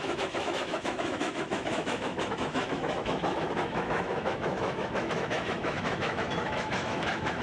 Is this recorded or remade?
remade